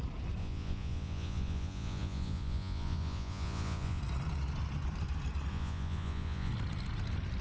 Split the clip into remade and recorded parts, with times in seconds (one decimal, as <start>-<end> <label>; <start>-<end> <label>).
0.0-0.4 recorded; 0.4-4.0 remade; 4.0-5.5 recorded; 5.5-6.5 remade; 6.5-7.4 recorded